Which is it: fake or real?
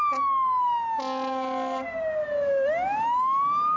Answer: real